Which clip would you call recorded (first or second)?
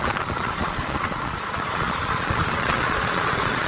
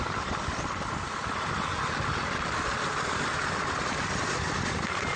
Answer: second